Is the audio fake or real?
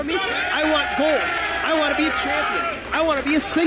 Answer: real